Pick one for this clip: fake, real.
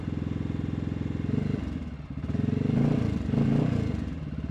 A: real